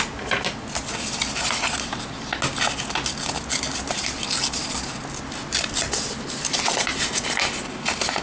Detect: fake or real real